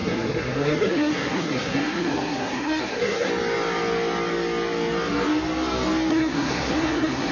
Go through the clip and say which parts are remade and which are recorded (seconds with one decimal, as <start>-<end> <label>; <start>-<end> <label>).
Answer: 0.0-3.3 remade; 3.3-6.1 recorded; 6.1-7.3 remade